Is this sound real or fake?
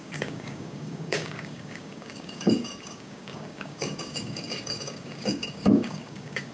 fake